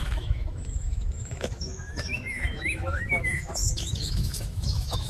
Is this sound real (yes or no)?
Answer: no